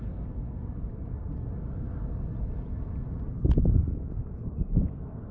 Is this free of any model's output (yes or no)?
yes